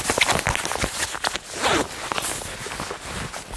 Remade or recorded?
recorded